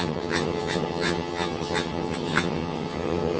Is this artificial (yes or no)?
yes